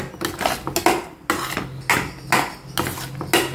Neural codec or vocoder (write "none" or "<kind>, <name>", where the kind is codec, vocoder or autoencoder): none